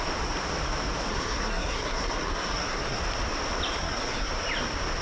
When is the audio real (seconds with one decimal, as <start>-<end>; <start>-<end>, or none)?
0.0-1.1; 3.0-3.8; 4.3-5.0